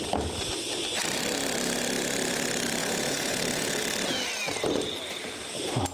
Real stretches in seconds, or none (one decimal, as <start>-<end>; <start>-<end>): 0.0-2.8; 3.8-5.9